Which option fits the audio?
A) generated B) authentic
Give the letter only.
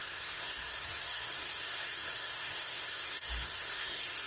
A